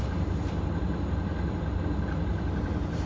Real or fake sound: real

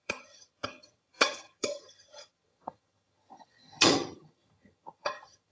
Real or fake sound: fake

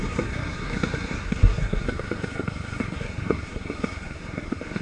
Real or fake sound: fake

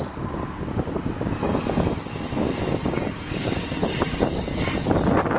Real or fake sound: real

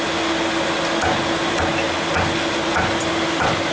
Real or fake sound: real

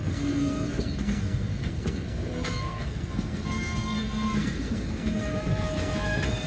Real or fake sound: fake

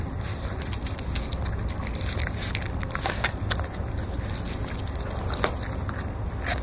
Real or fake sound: real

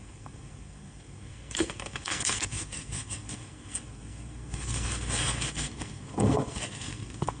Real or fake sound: fake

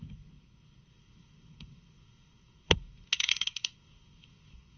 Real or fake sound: fake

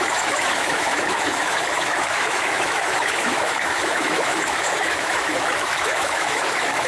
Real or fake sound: fake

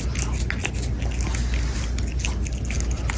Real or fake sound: real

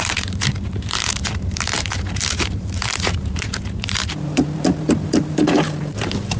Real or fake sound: fake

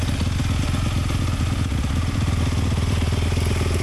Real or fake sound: real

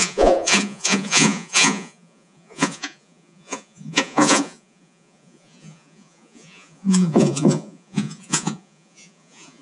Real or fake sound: fake